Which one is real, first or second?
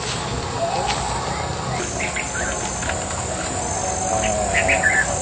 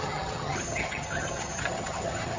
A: first